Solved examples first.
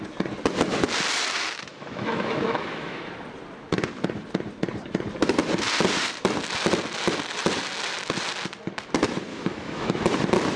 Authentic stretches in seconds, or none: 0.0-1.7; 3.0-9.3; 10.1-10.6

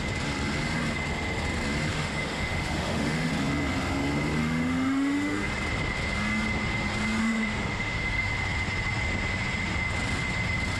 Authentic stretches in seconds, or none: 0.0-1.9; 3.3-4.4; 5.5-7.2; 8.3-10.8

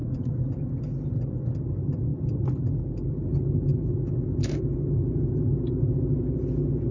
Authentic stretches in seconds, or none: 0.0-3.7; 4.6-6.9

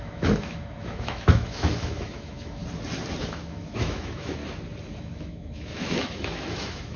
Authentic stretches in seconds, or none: 2.6-3.2; 4.4-5.0

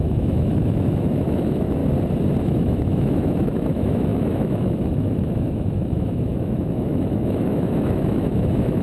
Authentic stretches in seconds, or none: 1.8-2.4

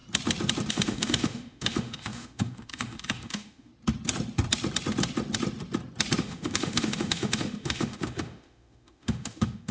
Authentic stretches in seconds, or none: 0.0-0.7; 3.7-6.2

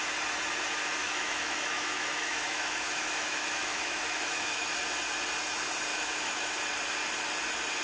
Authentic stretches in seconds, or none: 0.0-1.0; 4.7-5.9; 6.5-7.8

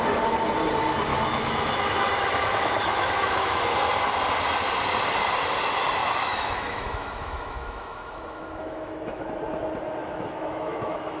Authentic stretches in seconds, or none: 0.0-1.1; 3.6-6.0; 9.3-10.0